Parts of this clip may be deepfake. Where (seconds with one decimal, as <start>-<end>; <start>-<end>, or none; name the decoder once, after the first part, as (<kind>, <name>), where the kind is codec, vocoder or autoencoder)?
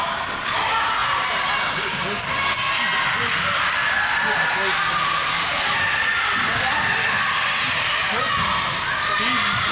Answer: none